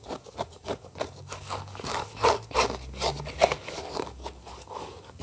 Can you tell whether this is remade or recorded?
remade